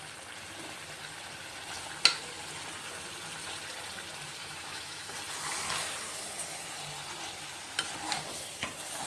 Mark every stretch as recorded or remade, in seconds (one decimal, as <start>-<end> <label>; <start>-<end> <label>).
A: 0.0-4.4 recorded; 4.4-5.1 remade; 5.1-9.1 recorded